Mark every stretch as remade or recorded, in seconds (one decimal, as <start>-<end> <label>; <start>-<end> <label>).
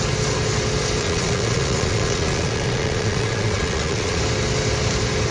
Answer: 0.0-1.0 recorded; 1.0-4.2 remade; 4.2-5.3 recorded